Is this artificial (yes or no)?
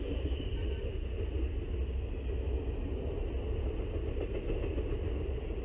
no